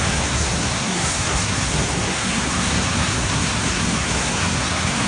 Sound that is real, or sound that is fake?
fake